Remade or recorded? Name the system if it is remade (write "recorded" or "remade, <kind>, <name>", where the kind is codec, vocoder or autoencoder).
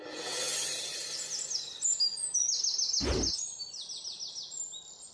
recorded